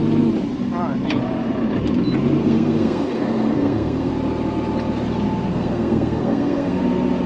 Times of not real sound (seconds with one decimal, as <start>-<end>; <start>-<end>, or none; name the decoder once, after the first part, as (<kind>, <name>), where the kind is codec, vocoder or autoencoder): 2.4-4.1 (codec, SNAC); 5.5-6.8